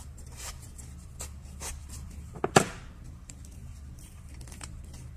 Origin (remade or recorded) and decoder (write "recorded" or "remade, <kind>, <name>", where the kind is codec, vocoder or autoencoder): remade, vocoder, BigVGAN v2